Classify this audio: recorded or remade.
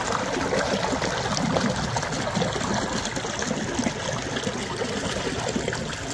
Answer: recorded